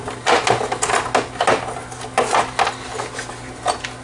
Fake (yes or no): no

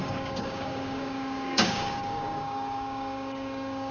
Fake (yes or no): yes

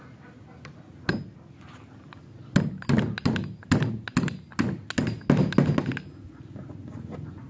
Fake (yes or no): no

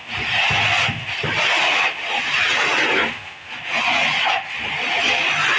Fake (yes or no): no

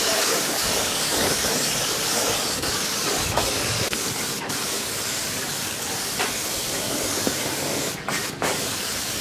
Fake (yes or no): yes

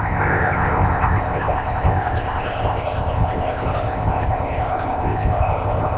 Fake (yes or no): yes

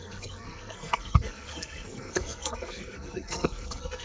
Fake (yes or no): yes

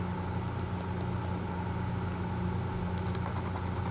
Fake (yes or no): no